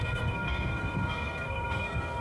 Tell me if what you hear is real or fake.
fake